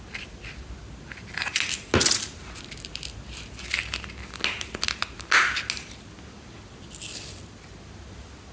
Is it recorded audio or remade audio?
recorded